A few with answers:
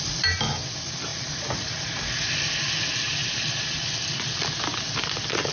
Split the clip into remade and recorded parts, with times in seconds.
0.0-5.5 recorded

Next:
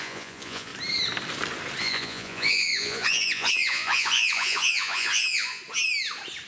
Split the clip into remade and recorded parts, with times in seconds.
0.0-0.7 remade; 0.7-1.8 recorded; 1.8-5.6 remade; 5.6-6.5 recorded

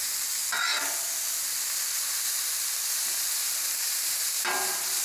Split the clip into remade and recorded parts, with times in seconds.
0.0-5.0 recorded

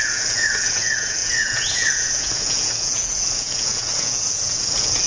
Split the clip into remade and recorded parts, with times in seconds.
0.0-5.1 remade

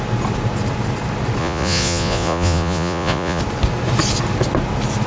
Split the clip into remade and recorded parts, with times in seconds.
0.0-1.4 recorded; 1.4-3.4 remade; 3.4-5.1 recorded

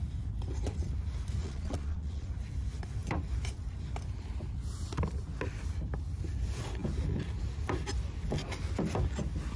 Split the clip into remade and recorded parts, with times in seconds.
0.0-1.4 recorded; 1.4-2.3 remade; 2.3-9.6 recorded

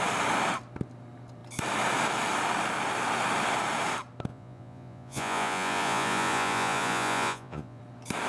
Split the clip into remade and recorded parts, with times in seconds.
0.0-4.3 recorded; 4.3-7.8 remade; 7.8-8.3 recorded

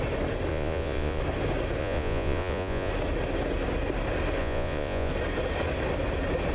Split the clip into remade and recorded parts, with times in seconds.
0.0-0.5 recorded; 0.5-1.2 remade; 1.2-1.8 recorded; 1.8-2.9 remade; 2.9-4.4 recorded; 4.4-5.1 remade; 5.1-6.5 recorded